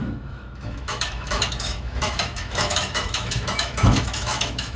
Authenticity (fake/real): fake